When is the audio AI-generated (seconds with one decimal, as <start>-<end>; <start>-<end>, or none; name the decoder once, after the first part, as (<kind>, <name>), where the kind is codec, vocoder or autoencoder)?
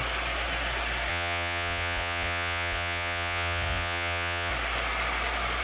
1.1-4.5 (vocoder, Vocos)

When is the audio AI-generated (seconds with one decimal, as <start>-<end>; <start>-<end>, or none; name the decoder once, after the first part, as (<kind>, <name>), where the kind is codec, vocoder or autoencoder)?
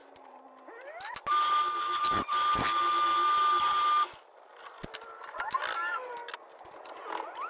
none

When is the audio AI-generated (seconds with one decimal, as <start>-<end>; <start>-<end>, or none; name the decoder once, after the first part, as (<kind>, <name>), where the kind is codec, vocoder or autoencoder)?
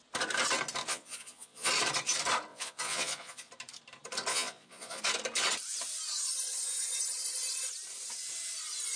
0.9-1.7 (vocoder, Vocos); 2.5-3.5; 4.3-5.0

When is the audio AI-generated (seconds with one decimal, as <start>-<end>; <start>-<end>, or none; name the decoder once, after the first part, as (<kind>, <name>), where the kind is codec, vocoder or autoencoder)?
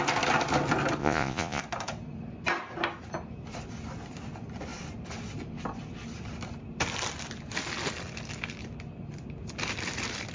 1.0-1.6 (vocoder, Vocos)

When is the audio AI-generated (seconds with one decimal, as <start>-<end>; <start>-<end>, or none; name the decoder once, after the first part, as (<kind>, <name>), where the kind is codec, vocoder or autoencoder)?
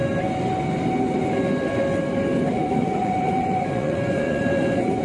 2.5-5.0 (vocoder, Vocos)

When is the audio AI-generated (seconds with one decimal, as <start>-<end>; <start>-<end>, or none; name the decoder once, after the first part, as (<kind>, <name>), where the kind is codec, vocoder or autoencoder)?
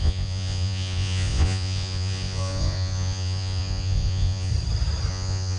0.0-4.5 (vocoder, Vocos); 5.1-5.6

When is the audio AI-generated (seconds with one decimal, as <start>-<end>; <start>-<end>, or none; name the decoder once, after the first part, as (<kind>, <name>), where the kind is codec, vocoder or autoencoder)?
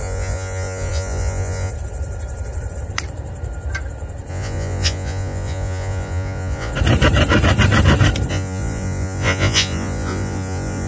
0.0-1.7 (vocoder, Vocos); 4.3-6.7; 8.3-10.9